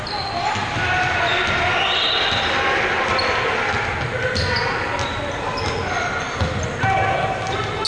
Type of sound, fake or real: real